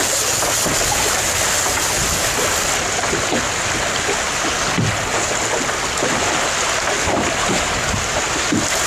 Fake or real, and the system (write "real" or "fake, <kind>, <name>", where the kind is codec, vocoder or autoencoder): real